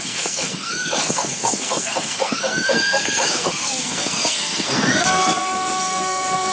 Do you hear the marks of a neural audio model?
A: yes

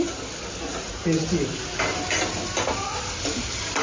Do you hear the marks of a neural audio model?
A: no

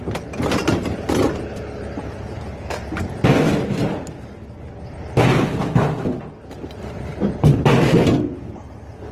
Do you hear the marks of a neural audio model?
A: no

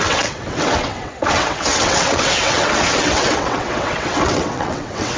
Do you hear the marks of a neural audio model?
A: yes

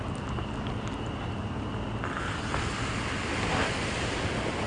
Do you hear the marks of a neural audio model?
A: no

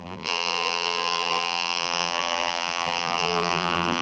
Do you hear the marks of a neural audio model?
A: yes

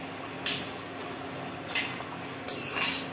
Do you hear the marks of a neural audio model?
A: no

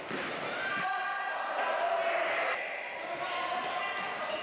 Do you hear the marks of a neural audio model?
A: no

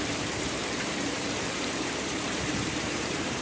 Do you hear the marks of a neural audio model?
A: yes